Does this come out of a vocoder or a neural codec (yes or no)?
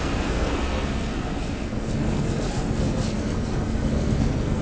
yes